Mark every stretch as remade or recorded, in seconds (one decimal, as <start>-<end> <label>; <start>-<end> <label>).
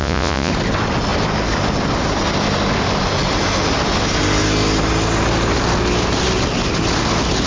0.0-0.5 remade; 0.5-7.5 recorded